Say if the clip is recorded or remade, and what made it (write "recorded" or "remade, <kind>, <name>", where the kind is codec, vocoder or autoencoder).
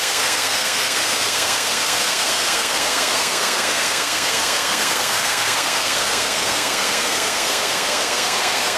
remade, codec, SNAC